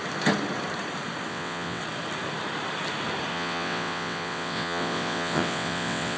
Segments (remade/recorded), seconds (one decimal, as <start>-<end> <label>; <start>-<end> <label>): 0.0-1.3 recorded; 1.3-1.8 remade; 1.8-3.3 recorded; 3.3-6.2 remade